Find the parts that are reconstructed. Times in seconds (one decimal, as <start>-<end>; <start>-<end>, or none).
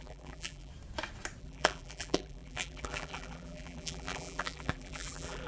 0.0-0.7; 1.4-5.5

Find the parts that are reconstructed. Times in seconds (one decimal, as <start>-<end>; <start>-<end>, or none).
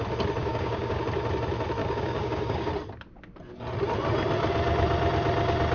0.4-1.0; 1.8-2.7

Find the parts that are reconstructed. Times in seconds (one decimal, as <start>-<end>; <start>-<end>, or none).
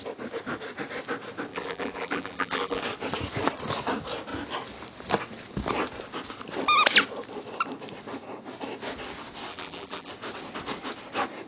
1.5-2.8; 9.5-10.1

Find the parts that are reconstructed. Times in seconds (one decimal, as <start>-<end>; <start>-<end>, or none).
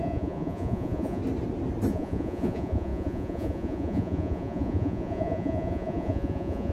0.0-1.2; 1.9-6.7